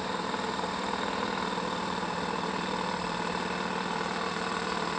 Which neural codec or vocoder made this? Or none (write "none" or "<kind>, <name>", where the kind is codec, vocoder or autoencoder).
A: vocoder, BigVGAN v2